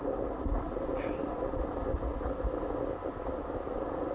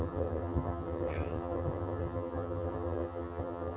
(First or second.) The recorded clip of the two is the first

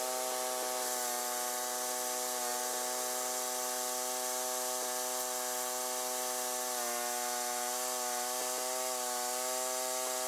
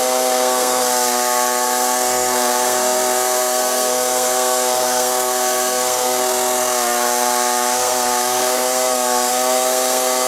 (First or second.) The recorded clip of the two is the first